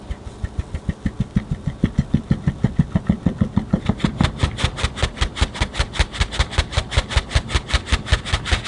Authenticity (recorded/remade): recorded